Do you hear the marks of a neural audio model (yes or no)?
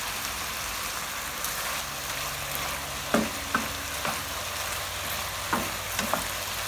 no